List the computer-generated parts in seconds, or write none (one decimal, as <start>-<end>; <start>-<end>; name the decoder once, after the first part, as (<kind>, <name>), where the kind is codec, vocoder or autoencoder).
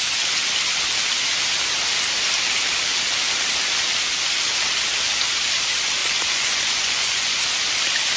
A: 6.0-7.4 (vocoder, Vocos)